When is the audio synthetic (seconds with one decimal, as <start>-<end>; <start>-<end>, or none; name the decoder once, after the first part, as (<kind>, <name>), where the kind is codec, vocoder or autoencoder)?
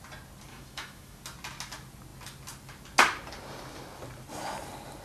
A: 0.5-1.2 (autoencoder, DAC-VAE)